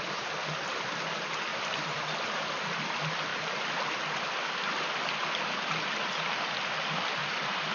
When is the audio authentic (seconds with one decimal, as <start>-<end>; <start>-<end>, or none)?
0.0-1.5; 2.0-7.2